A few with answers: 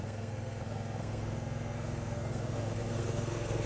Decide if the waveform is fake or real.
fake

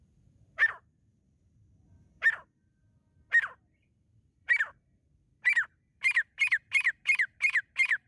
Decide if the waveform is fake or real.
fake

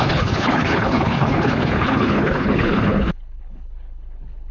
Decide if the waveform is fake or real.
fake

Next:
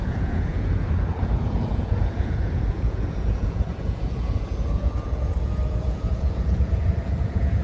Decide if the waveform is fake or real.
fake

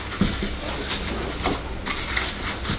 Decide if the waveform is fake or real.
real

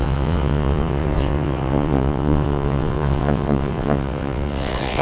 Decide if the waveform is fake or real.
fake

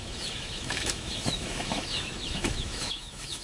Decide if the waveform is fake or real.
fake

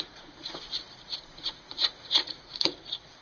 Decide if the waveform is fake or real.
fake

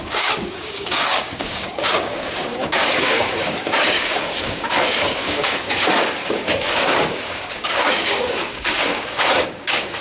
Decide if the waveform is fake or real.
fake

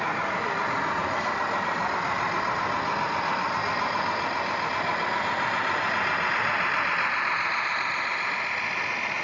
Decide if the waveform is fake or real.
real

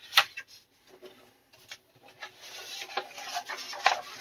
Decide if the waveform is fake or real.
real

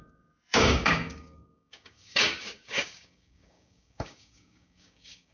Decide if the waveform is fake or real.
fake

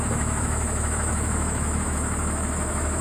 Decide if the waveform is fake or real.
fake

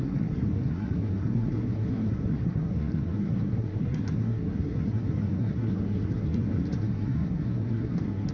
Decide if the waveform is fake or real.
fake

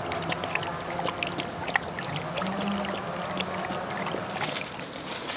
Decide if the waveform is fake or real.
real